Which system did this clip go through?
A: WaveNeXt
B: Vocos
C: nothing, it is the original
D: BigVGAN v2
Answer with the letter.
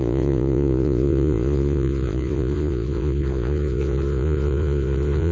B